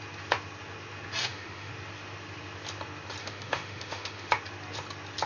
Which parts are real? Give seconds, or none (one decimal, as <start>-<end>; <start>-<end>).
0.0-1.2; 1.7-3.2; 4.3-5.3